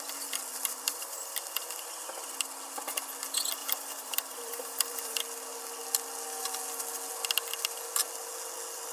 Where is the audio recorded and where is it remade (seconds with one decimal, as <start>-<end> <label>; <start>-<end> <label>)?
0.0-0.5 recorded; 0.5-1.6 remade; 1.6-3.6 recorded; 3.6-5.2 remade; 5.2-8.9 recorded